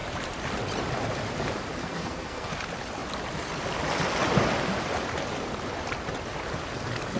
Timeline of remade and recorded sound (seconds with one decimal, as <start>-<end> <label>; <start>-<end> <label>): 0.0-1.8 recorded; 1.8-2.5 remade; 2.5-7.2 recorded